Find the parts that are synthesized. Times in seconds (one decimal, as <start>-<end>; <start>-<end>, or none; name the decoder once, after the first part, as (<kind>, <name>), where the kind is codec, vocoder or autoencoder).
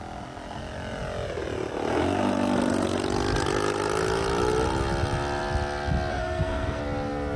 6.1-6.8 (codec, SNAC)